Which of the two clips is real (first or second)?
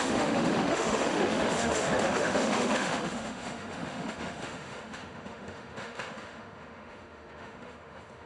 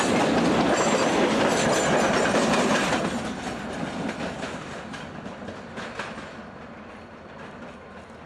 second